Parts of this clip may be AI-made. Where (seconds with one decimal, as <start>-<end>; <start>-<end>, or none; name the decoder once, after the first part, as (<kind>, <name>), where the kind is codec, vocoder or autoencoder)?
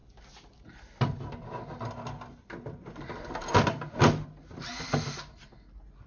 none